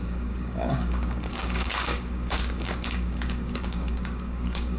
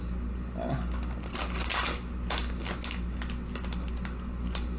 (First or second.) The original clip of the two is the second